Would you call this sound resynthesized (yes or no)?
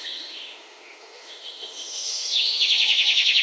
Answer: yes